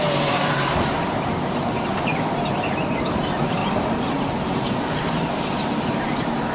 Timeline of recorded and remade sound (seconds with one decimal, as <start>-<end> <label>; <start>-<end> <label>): 0.0-3.6 remade; 3.6-4.1 recorded; 4.1-6.5 remade